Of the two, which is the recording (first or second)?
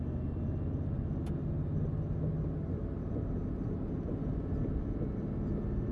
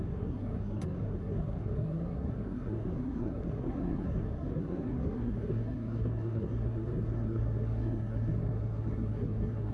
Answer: first